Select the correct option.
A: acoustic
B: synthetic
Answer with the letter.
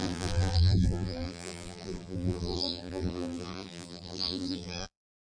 B